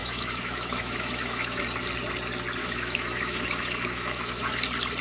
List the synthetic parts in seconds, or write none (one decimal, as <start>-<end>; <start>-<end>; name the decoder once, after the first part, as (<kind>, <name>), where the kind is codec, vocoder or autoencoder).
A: 0.0-1.6 (autoencoder, DAC-VAE); 2.6-4.4